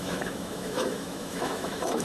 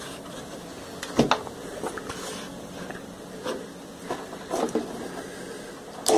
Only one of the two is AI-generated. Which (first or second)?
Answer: first